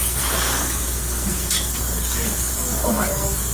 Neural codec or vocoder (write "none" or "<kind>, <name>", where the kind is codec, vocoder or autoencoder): codec, SNAC